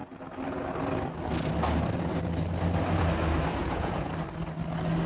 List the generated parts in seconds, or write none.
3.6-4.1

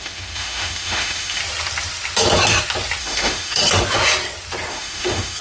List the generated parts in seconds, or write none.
0.0-1.4; 3.0-3.6; 4.7-5.4

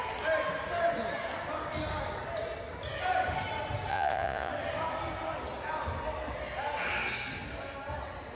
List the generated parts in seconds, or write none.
3.9-4.5

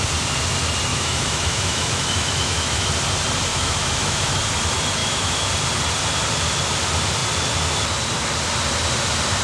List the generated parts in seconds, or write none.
0.9-2.9; 3.5-4.4; 5.0-5.5

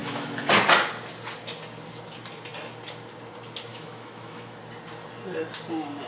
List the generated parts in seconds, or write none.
0.0-0.5; 3.7-4.6